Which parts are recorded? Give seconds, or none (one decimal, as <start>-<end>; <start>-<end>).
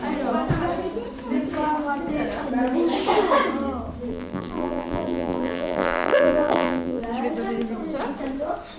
0.0-4.1; 7.0-8.8